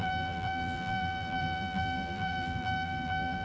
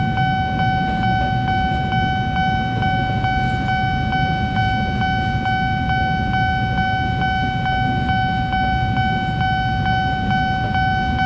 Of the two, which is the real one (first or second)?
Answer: second